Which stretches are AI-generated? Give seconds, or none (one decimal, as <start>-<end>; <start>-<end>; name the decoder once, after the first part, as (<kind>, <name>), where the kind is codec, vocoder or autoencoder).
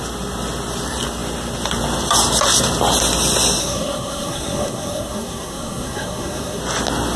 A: 3.6-6.6 (codec, SNAC)